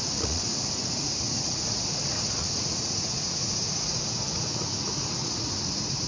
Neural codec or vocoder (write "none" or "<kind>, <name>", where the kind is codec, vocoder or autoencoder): vocoder, Vocos